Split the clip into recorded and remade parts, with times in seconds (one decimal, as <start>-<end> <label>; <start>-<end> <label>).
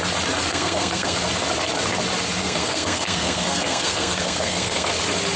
0.0-0.5 recorded; 0.5-1.2 remade; 1.2-2.4 recorded; 2.4-4.9 remade; 4.9-5.4 recorded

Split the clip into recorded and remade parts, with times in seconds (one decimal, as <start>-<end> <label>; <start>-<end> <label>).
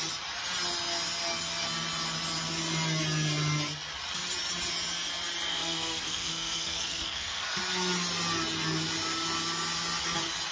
0.0-5.5 recorded; 5.5-7.6 remade; 7.6-10.5 recorded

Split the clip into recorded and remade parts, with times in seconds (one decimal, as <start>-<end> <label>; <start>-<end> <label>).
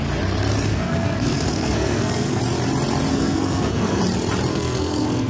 0.0-0.7 recorded; 0.7-2.4 remade; 2.4-3.1 recorded; 3.1-4.0 remade; 4.0-4.5 recorded; 4.5-5.3 remade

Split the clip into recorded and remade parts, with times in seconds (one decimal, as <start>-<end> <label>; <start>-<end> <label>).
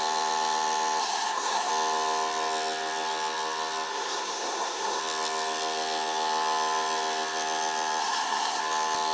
0.0-1.0 recorded; 1.0-1.7 remade; 1.7-3.9 recorded; 3.9-5.0 remade; 5.0-8.0 recorded; 8.0-8.6 remade; 8.6-9.1 recorded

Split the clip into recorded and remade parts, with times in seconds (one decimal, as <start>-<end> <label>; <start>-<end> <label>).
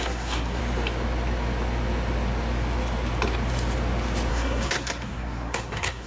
0.0-0.6 remade; 0.6-4.3 recorded; 4.3-6.1 remade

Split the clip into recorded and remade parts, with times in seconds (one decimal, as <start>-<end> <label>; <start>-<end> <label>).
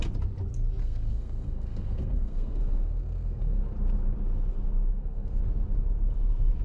0.0-0.8 recorded; 0.8-3.6 remade; 3.6-4.9 recorded; 4.9-5.4 remade; 5.4-6.6 recorded